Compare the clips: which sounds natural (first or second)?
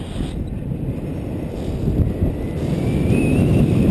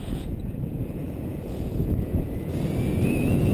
first